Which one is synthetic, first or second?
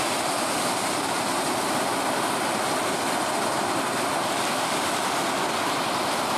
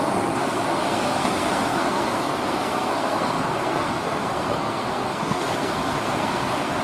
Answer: second